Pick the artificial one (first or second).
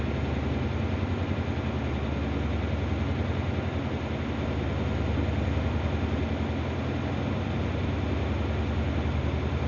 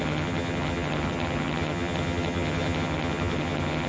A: second